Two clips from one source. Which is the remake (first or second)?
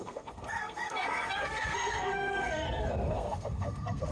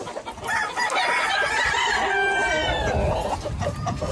first